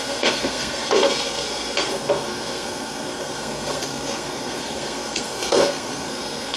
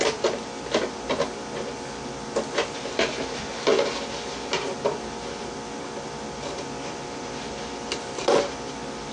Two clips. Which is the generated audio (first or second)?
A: first